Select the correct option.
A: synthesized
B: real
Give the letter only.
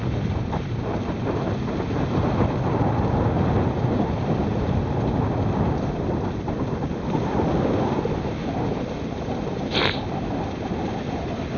B